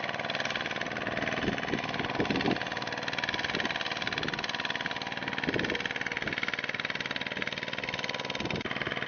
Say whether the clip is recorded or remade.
recorded